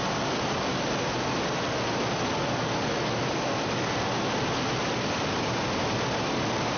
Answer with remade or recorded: recorded